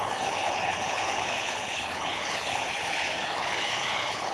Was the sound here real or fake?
fake